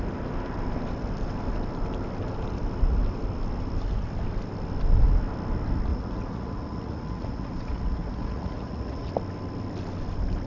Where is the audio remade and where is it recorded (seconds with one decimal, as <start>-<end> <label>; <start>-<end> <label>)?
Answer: 0.0-5.9 recorded; 5.9-9.1 remade; 9.1-10.5 recorded